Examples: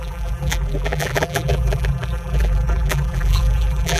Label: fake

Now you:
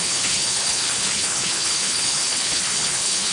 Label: fake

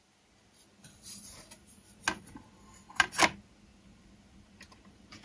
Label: real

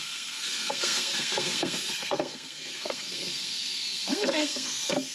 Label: fake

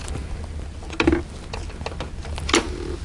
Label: real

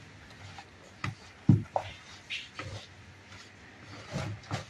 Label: real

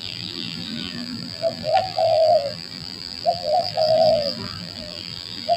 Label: fake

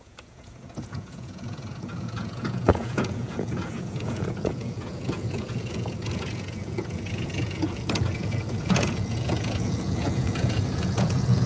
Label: fake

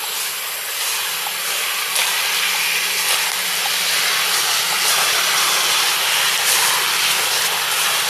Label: real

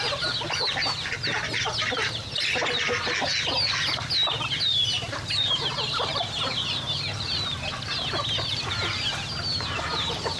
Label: real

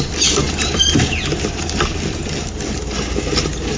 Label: fake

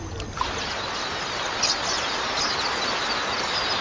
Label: real